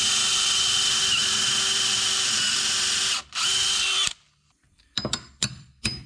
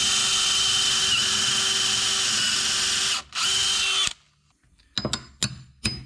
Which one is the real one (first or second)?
second